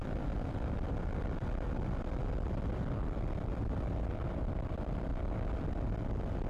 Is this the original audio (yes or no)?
yes